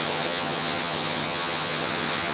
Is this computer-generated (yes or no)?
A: yes